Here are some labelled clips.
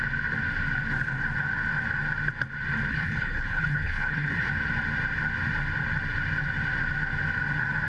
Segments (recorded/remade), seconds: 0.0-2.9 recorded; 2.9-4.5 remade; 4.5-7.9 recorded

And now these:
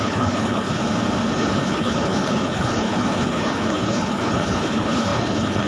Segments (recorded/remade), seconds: 0.0-0.8 remade; 0.8-1.3 recorded; 1.3-5.7 remade

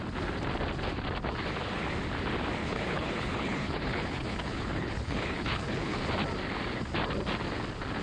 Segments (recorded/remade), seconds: 0.0-2.6 recorded; 2.6-6.0 remade; 6.0-8.0 recorded

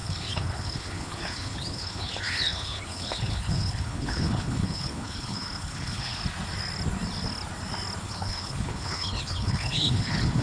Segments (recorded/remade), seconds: 0.0-6.2 remade; 6.2-8.0 recorded; 8.0-10.4 remade

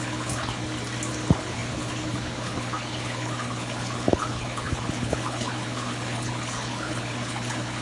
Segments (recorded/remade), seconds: 0.0-0.6 remade; 0.6-1.1 recorded; 1.1-7.8 remade

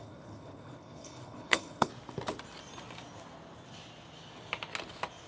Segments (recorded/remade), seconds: 0.0-1.9 remade; 1.9-5.3 recorded

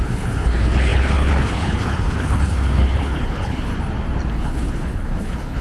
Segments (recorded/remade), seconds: 0.0-3.7 remade; 3.7-4.3 recorded; 4.3-5.6 remade

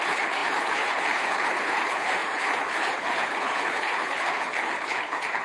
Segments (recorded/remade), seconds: 0.0-5.4 remade